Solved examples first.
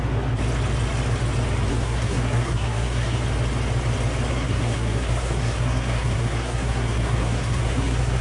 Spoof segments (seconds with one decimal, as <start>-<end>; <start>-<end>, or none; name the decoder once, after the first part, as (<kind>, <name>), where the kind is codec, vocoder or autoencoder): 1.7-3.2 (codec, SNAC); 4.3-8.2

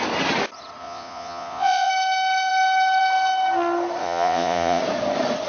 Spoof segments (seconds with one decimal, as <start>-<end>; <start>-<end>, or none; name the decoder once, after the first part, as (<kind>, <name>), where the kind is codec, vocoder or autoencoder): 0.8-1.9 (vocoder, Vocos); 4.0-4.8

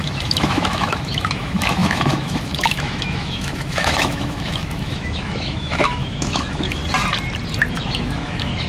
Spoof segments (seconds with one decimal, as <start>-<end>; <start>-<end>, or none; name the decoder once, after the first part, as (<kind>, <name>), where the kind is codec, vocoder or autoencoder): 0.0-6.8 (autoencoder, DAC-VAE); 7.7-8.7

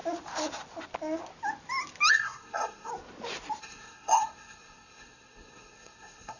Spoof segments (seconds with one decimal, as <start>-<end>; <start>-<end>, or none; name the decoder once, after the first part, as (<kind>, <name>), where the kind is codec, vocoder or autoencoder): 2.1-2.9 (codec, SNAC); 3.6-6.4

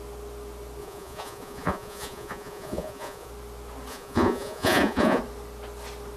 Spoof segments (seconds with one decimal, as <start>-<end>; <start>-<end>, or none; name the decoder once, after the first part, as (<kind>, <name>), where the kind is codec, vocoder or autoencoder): 0.8-3.3 (vocoder, Vocos); 3.9-5.2

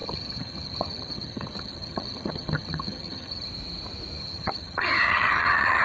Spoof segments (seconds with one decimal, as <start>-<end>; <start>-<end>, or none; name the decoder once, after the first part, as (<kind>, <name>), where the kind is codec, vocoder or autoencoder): 0.0-3.5 (vocoder, HiFi-GAN); 4.2-5.8